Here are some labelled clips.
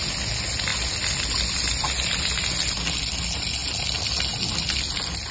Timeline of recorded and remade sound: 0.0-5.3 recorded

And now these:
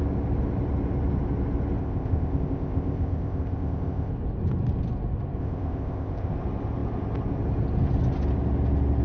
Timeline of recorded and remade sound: 0.0-1.8 recorded; 1.8-4.1 remade; 4.1-5.4 recorded; 5.4-6.3 remade; 6.3-9.0 recorded

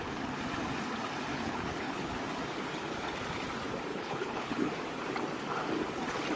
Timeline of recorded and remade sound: 0.0-1.3 recorded; 1.3-2.1 remade; 2.1-3.9 recorded; 3.9-4.7 remade; 4.7-6.4 recorded

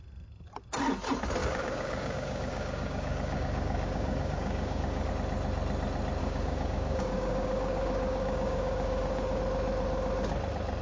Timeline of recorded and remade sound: 0.0-1.4 recorded; 1.4-5.1 remade; 5.1-6.2 recorded; 6.2-9.4 remade; 9.4-10.8 recorded